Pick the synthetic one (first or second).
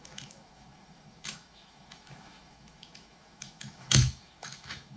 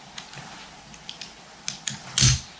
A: first